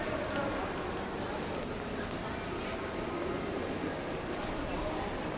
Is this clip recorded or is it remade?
recorded